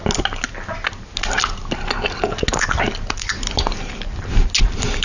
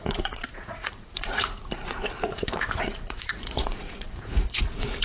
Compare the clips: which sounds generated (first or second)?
second